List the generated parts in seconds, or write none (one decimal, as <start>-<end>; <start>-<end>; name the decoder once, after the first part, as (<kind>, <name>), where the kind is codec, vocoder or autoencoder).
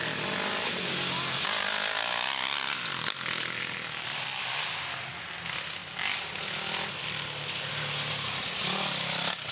none